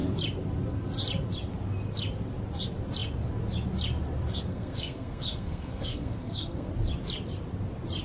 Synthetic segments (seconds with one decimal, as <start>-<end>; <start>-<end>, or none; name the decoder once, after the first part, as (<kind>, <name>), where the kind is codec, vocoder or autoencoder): 4.5-6.7 (codec, SNAC)